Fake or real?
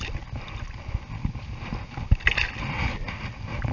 real